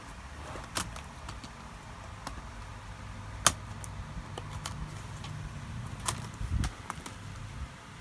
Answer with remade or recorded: recorded